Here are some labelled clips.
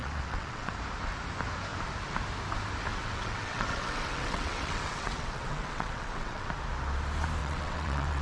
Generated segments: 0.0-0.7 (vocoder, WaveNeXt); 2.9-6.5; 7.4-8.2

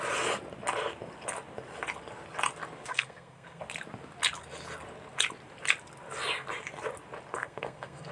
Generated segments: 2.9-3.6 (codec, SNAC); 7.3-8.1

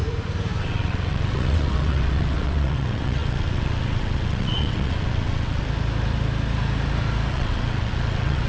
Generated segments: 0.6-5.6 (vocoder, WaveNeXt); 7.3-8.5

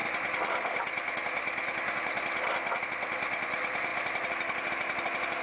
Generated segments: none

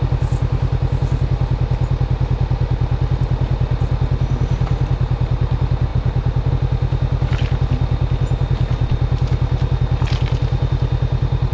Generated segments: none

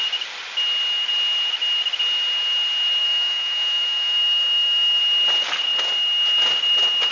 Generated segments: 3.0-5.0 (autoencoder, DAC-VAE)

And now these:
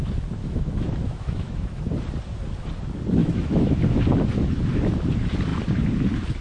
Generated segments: 0.4-1.9 (autoencoder, DAC-VAE); 3.2-3.8

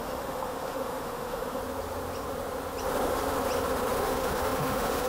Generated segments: 0.0-1.6 (autoencoder, DAC-VAE); 4.0-5.1